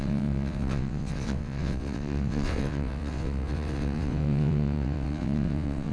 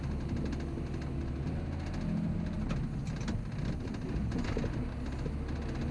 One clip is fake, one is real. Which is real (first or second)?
second